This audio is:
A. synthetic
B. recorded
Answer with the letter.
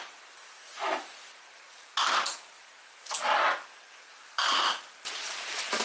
B